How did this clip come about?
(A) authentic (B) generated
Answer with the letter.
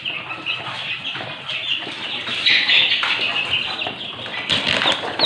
A